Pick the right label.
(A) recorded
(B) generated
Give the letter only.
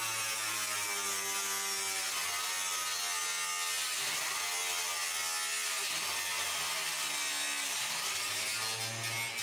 A